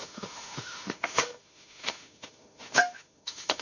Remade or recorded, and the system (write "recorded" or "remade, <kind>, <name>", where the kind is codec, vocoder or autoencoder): remade, autoencoder, DAC-VAE